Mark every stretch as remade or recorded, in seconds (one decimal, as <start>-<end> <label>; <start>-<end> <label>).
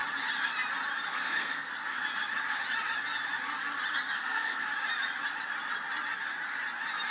0.0-1.1 recorded; 1.1-1.7 remade; 1.7-4.2 recorded; 4.2-4.7 remade; 4.7-7.1 recorded